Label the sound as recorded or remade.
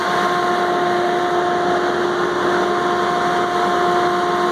recorded